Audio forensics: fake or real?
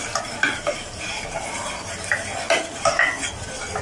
real